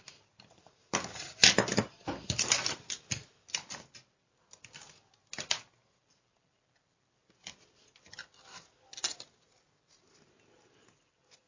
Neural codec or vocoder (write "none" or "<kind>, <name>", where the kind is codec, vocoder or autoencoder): none